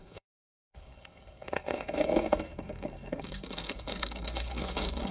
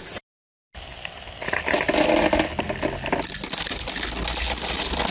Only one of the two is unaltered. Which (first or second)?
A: second